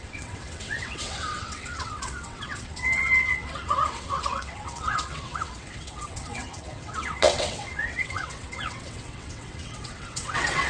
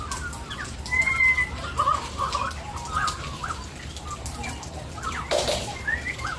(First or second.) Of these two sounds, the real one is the second